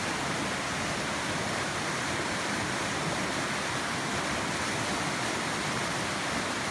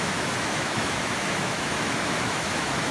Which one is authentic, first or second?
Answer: first